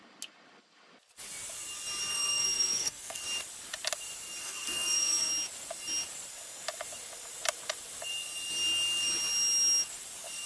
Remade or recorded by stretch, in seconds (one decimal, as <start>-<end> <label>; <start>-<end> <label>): 0.0-2.1 recorded; 2.1-3.2 remade; 3.2-4.4 recorded; 4.4-5.3 remade; 5.3-10.5 recorded